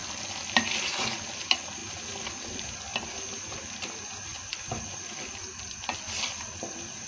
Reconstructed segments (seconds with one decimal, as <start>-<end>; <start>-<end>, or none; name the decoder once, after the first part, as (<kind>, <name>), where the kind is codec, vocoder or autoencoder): none